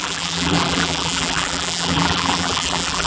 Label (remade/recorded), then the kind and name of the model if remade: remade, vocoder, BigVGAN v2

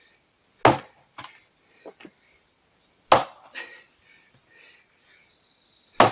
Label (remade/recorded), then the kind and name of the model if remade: recorded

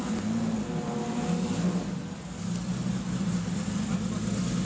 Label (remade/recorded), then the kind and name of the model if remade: recorded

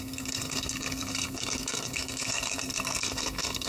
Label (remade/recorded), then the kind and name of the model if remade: remade, codec, SNAC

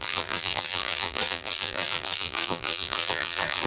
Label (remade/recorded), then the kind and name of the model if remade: remade, vocoder, BigVGAN v2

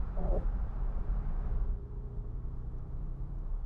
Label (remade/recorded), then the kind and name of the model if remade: remade, vocoder, BigVGAN v2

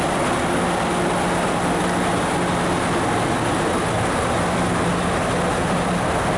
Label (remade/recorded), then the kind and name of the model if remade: recorded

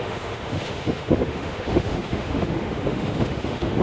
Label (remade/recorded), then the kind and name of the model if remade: remade, autoencoder, DAC-VAE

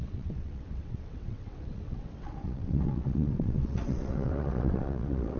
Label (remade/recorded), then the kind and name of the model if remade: remade, vocoder, WaveNeXt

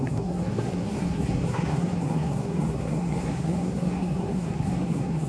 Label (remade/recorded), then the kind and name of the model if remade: remade, codec, SNAC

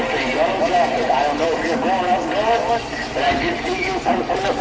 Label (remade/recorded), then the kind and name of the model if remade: remade, vocoder, BigVGAN v2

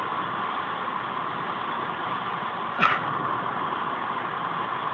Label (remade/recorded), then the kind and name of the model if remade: recorded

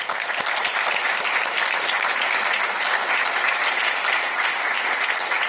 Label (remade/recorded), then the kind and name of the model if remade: recorded